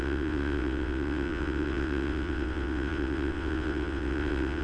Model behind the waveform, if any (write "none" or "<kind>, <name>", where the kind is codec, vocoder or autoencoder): vocoder, WaveNeXt